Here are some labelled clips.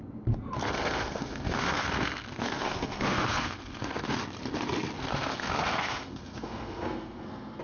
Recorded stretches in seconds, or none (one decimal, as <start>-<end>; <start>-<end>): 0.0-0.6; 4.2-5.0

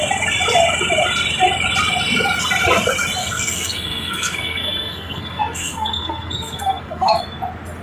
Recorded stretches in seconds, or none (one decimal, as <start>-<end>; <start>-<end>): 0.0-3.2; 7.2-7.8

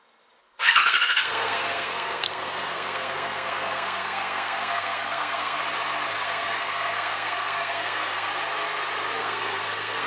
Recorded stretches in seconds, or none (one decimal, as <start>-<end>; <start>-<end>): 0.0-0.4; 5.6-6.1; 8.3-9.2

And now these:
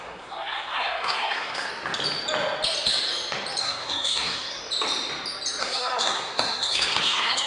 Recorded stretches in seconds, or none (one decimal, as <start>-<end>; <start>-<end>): 1.7-3.6; 4.6-5.6

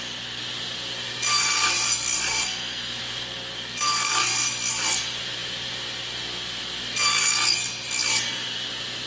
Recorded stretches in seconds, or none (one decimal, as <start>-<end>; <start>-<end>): 0.0-2.3; 2.9-9.1

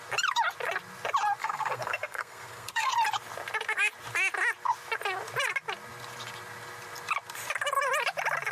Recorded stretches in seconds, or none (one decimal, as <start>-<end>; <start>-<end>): 0.0-1.4; 2.9-8.5

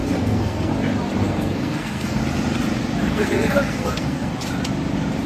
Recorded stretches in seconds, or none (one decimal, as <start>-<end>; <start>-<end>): 0.7-1.2; 2.2-3.0; 4.3-5.3

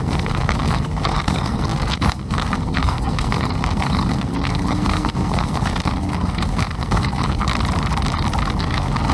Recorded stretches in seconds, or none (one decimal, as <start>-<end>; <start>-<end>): 7.5-8.6